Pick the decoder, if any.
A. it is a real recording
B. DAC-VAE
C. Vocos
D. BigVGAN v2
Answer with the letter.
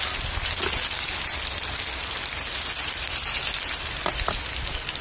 A